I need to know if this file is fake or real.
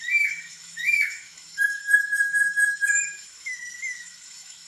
fake